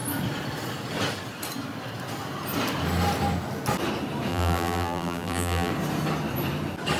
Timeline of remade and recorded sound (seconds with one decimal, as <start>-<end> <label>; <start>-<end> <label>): 0.0-4.3 recorded; 4.3-5.7 remade; 5.7-7.0 recorded